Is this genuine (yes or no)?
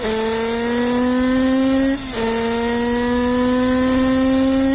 yes